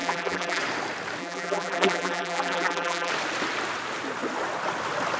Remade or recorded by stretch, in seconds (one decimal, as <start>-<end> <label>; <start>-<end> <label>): 0.0-0.6 remade; 0.6-1.2 recorded; 1.2-3.1 remade; 3.1-5.2 recorded